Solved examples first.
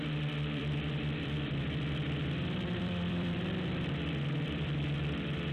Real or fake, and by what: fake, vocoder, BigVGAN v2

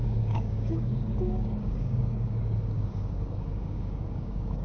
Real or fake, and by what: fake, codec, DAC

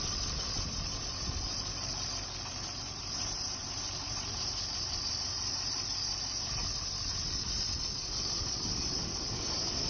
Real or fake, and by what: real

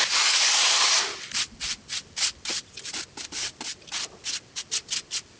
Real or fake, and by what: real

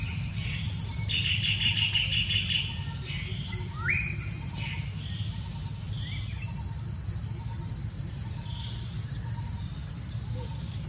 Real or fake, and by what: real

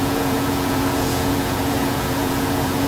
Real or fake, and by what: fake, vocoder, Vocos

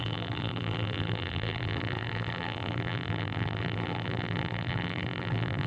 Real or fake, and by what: fake, vocoder, BigVGAN v2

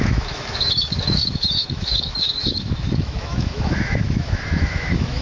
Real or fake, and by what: fake, autoencoder, DAC-VAE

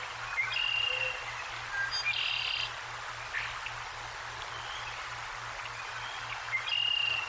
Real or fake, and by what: real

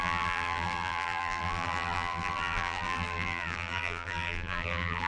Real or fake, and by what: fake, vocoder, BigVGAN v2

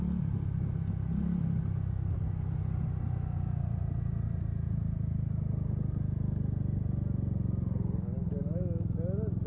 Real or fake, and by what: real